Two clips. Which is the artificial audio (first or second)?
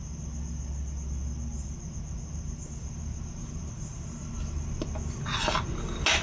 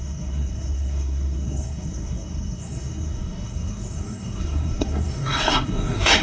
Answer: second